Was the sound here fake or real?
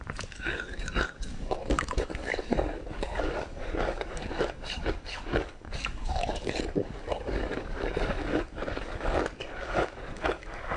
fake